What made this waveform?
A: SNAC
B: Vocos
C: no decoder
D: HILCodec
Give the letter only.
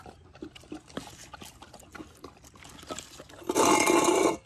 C